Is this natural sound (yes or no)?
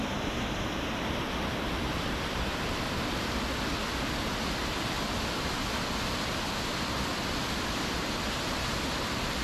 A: yes